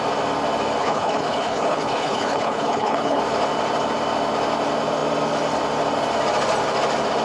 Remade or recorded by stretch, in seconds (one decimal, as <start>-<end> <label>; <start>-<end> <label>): 0.0-0.8 recorded; 0.8-3.2 remade; 3.2-7.2 recorded